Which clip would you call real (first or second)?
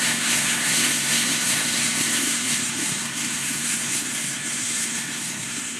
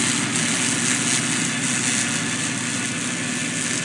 second